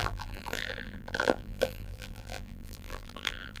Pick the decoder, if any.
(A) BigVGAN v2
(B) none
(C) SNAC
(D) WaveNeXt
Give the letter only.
A